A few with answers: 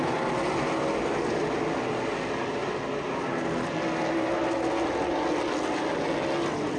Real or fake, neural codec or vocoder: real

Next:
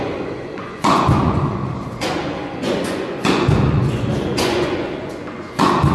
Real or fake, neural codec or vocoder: fake, vocoder, Vocos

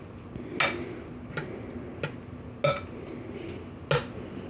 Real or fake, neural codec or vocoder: real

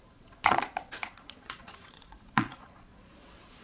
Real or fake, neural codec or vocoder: fake, vocoder, Vocos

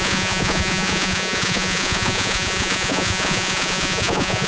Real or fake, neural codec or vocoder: fake, vocoder, Vocos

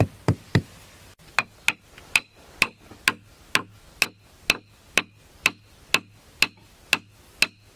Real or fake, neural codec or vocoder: real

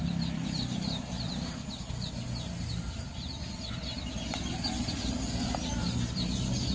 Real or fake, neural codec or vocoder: real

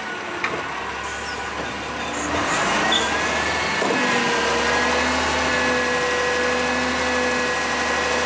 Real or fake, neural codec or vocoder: real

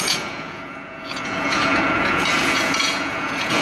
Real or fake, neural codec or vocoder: fake, vocoder, Vocos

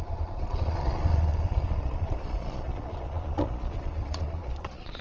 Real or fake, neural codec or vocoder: fake, vocoder, Vocos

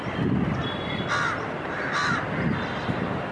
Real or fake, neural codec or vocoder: real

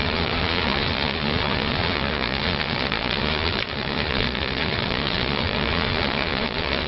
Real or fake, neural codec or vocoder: fake, vocoder, Vocos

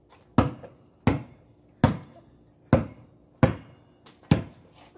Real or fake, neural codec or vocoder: real